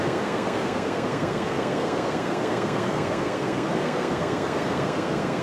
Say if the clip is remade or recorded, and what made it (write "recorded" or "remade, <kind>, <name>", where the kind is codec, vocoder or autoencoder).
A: remade, codec, SNAC